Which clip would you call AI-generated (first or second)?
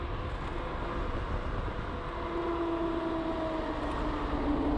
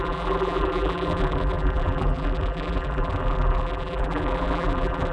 second